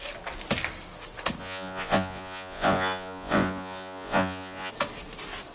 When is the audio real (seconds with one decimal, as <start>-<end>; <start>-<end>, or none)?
0.0-1.4; 4.7-5.5